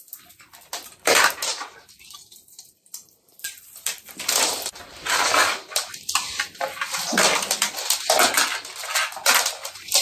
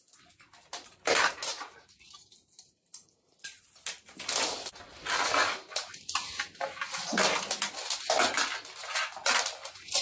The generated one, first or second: first